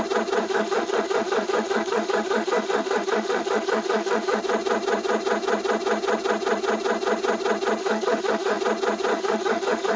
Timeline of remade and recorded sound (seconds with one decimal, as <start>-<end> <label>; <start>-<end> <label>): 0.0-0.4 recorded; 0.4-4.4 remade; 4.4-7.8 recorded; 7.8-8.6 remade; 8.6-9.1 recorded; 9.1-10.0 remade

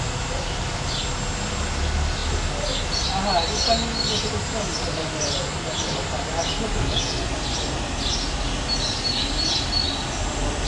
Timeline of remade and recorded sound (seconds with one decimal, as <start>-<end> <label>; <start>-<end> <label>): 0.0-10.7 recorded

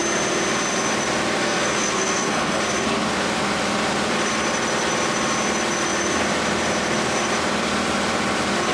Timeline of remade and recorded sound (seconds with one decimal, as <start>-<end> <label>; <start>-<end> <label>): 0.0-1.4 recorded; 1.4-2.6 remade; 2.6-8.7 recorded

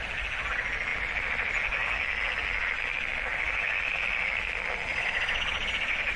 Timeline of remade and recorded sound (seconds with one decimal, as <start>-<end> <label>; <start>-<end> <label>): 0.0-4.9 recorded; 4.9-6.2 remade